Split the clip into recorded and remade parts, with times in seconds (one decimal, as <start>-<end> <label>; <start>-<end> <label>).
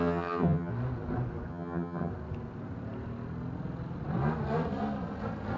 0.0-0.7 remade; 0.7-1.5 recorded; 1.5-2.1 remade; 2.1-5.6 recorded